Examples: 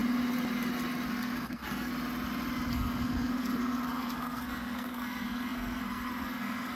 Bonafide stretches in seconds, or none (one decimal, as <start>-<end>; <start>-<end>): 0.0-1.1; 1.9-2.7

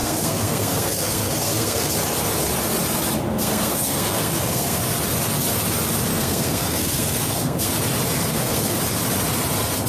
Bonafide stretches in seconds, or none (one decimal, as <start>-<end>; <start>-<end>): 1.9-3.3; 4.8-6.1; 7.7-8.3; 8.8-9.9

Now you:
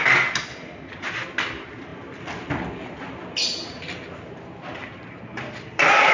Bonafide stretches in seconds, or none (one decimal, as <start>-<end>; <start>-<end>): 0.0-6.1